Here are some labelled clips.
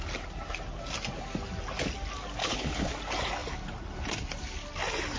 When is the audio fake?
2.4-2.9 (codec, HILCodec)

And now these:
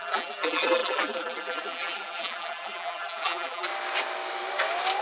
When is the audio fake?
0.0-3.7 (vocoder, BigVGAN v2)